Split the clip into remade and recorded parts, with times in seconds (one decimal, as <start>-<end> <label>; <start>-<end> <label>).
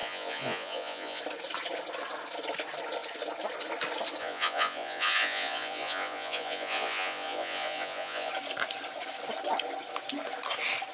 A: 0.0-1.2 remade; 1.2-4.2 recorded; 4.2-8.3 remade; 8.3-10.9 recorded